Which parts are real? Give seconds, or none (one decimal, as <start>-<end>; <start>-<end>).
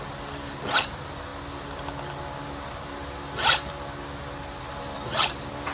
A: 1.3-4.7